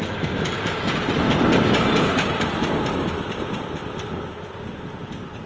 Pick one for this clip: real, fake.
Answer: real